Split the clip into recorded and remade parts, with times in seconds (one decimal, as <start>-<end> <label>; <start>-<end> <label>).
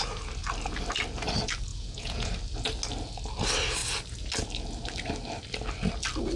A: 0.0-1.7 recorded; 1.7-2.3 remade; 2.3-6.4 recorded